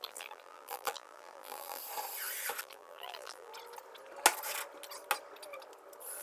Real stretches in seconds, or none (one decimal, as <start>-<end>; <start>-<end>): 1.8-2.6; 3.5-6.2